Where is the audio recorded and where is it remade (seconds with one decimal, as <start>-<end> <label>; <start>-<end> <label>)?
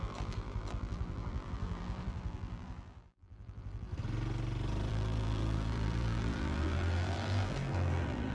0.0-3.9 remade; 3.9-4.9 recorded; 4.9-8.3 remade